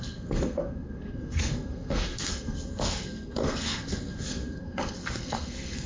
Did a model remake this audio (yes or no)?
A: yes